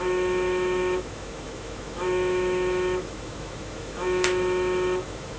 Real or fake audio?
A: fake